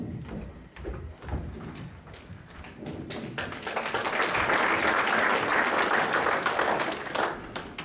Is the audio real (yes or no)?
yes